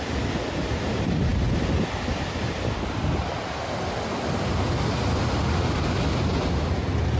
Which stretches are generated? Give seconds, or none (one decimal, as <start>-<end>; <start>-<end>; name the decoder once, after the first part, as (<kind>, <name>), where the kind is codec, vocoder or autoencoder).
none